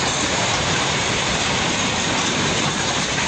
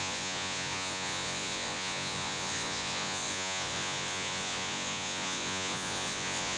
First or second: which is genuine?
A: first